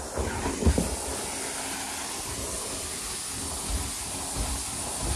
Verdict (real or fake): real